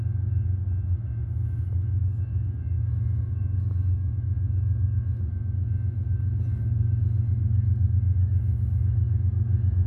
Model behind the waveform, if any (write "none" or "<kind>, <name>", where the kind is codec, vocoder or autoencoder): none